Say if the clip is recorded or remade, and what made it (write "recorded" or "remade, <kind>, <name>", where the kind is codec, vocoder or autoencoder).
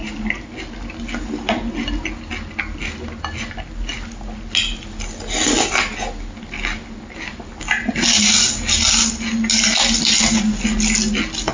recorded